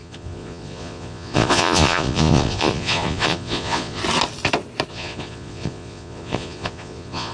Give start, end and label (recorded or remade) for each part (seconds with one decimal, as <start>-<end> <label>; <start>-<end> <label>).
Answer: 0.0-4.0 remade; 4.0-4.9 recorded; 4.9-7.3 remade